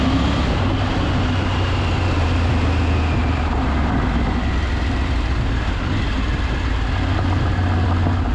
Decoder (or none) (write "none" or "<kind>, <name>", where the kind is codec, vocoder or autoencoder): none